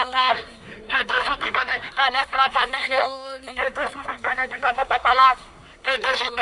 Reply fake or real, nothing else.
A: fake